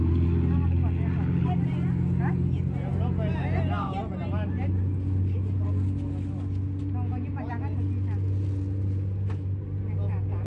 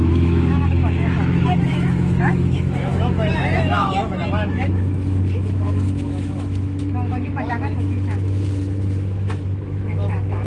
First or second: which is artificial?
second